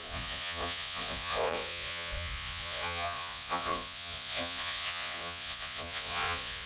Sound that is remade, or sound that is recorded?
remade